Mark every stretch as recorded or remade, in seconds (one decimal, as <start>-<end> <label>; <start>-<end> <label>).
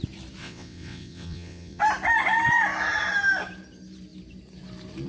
0.0-0.4 recorded; 0.4-1.8 remade; 1.8-5.1 recorded